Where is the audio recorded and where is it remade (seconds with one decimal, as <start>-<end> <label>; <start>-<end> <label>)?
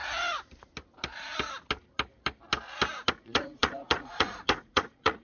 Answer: 0.0-3.1 recorded; 3.1-5.2 remade